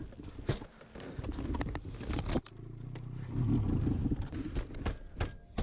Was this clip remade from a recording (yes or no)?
no